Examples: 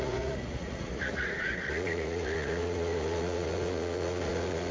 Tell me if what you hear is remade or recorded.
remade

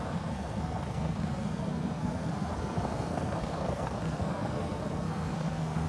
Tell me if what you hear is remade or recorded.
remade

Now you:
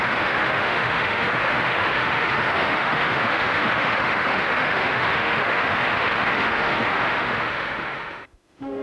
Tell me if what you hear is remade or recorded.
remade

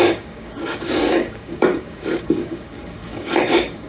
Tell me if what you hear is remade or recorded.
remade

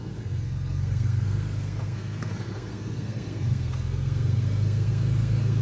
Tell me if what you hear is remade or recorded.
remade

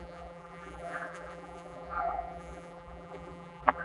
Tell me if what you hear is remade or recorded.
remade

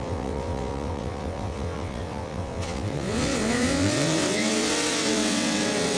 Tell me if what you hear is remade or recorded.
remade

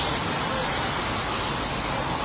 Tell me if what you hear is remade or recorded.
recorded